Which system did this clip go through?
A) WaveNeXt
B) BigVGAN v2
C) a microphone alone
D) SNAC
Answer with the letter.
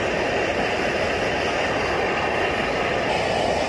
C